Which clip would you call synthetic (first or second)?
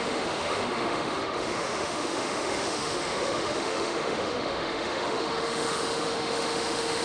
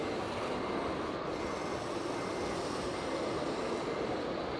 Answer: first